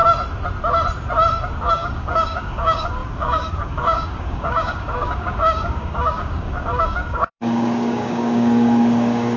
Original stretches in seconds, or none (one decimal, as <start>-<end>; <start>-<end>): 0.0-1.7